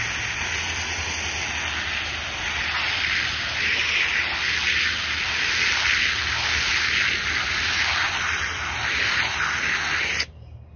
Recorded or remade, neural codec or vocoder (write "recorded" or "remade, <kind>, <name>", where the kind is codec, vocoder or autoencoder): recorded